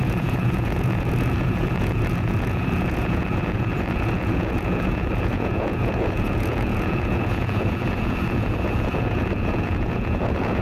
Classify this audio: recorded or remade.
remade